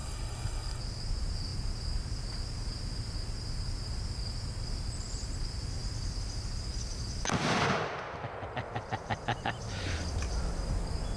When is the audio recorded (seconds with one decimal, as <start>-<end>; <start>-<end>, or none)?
0.8-11.2